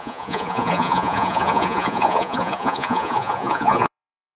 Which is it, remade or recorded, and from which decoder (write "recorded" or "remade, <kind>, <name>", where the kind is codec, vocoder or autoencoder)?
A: remade, vocoder, Vocos